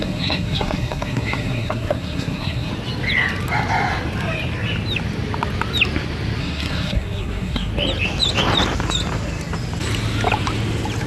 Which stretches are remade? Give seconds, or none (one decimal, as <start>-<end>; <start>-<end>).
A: 0.0-2.7; 6.4-7.7

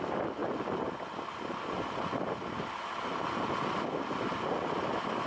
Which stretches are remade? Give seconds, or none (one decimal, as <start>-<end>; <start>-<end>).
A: none

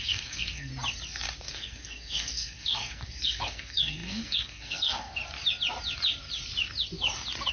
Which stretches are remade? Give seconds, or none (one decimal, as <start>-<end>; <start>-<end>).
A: 0.0-0.7; 1.4-5.2

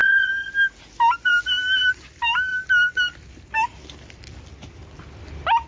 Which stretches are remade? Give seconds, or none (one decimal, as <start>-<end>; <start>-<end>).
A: 0.0-0.5

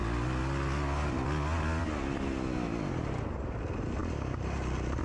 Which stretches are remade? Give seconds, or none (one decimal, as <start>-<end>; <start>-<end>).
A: none

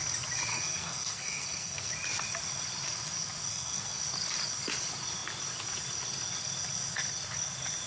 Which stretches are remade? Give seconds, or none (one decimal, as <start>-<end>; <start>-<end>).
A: 0.5-1.9; 3.5-4.0

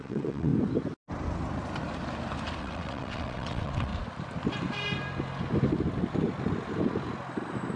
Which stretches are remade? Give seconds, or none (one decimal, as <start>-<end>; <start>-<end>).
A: 0.0-0.5; 2.6-3.9

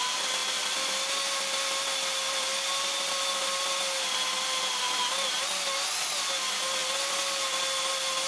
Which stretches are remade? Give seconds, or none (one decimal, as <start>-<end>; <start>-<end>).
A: none